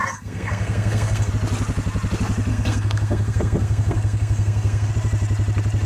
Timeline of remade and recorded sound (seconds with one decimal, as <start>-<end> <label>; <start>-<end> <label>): 0.0-1.3 remade; 1.3-2.5 recorded; 2.5-4.9 remade; 4.9-5.9 recorded